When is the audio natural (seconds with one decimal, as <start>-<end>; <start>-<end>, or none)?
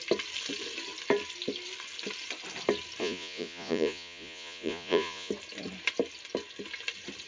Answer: 0.0-3.0; 5.3-7.3